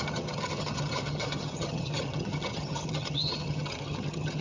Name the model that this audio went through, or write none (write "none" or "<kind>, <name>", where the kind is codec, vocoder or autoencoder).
vocoder, HiFi-GAN